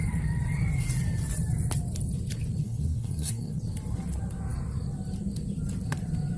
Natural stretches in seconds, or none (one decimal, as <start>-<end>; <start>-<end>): 0.0-2.6; 3.6-6.4